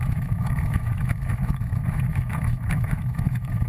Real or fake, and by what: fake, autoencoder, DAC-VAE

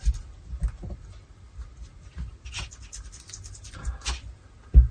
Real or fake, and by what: real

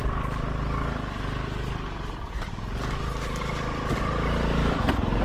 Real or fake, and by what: real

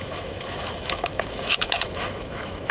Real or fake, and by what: fake, autoencoder, DAC-VAE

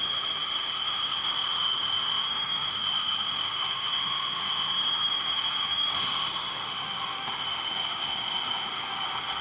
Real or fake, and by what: fake, autoencoder, DAC-VAE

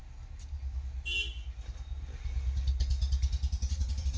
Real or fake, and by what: real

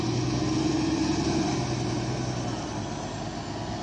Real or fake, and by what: real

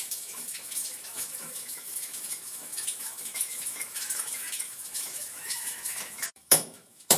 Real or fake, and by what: fake, autoencoder, DAC-VAE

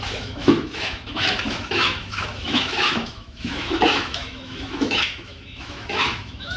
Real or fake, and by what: fake, autoencoder, DAC-VAE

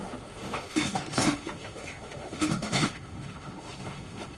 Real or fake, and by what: fake, autoencoder, DAC-VAE